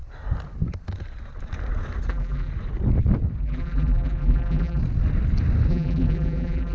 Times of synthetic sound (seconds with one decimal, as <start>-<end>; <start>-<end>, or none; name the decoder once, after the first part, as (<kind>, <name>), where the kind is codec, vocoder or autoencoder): 2.1-2.5 (vocoder, BigVGAN v2); 3.4-4.8; 5.7-6.7